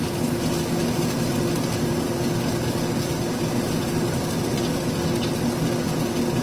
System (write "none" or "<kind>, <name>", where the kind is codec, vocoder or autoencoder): none